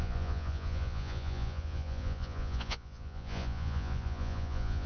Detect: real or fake fake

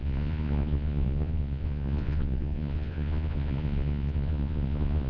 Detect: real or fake fake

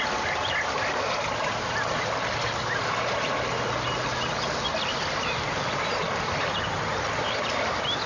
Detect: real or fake real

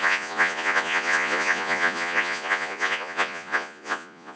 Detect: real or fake fake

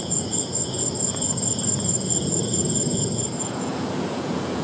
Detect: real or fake fake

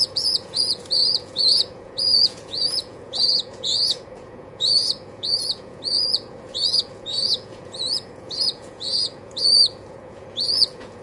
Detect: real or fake fake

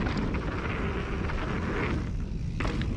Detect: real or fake real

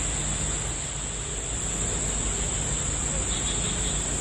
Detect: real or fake real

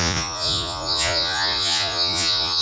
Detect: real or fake fake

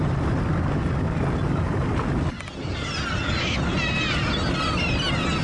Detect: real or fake real